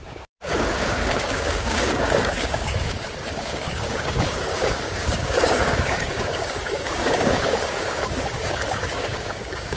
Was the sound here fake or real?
fake